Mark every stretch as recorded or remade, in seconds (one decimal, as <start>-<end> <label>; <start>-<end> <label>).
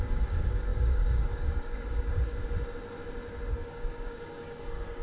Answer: 0.0-2.4 remade; 2.4-3.5 recorded; 3.5-5.0 remade